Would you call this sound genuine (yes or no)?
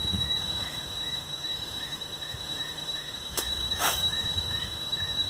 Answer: no